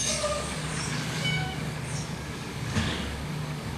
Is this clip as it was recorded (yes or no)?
no